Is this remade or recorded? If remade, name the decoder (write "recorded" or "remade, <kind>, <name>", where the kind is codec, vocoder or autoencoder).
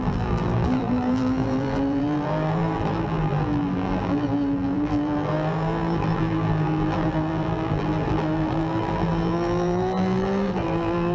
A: remade, vocoder, BigVGAN v2